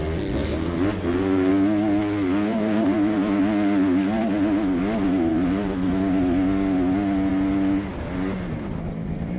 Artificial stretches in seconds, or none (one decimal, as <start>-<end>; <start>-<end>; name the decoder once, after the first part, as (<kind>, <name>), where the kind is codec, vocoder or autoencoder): 0.4-1.5 (vocoder, BigVGAN v2); 2.5-3.4; 5.3-5.9